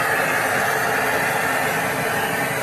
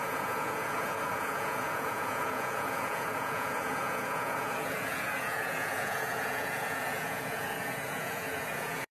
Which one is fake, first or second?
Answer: second